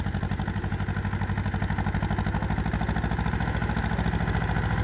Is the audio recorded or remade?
recorded